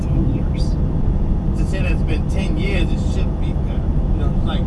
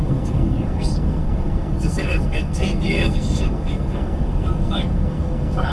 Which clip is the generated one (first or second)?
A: second